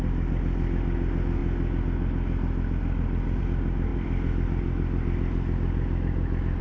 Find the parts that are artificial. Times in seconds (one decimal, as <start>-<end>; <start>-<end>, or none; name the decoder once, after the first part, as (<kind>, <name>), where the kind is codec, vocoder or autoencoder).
3.9-6.6 (vocoder, BigVGAN v2)